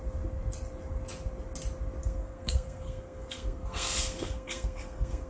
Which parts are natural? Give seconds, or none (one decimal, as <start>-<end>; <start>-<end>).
0.0-2.0